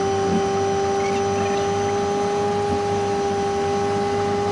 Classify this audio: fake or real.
real